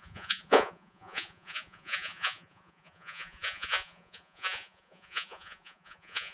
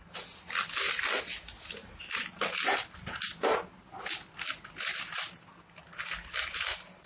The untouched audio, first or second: second